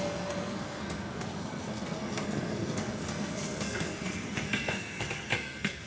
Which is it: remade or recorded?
remade